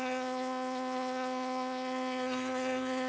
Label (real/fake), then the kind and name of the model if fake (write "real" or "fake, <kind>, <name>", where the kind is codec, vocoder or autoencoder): fake, codec, SNAC